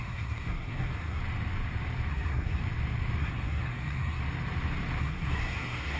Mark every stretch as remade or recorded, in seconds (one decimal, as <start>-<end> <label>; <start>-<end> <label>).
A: 0.0-1.2 remade; 1.2-2.1 recorded; 2.1-2.6 remade; 2.6-3.2 recorded; 3.2-4.2 remade; 4.2-5.0 recorded; 5.0-6.0 remade